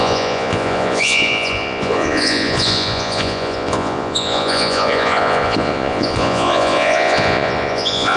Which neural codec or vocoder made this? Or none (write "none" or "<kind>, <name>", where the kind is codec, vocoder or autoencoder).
vocoder, Vocos